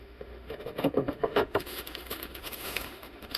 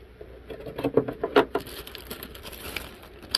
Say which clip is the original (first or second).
second